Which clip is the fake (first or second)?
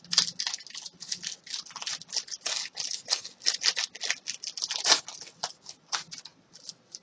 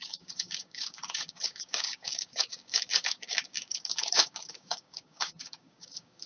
second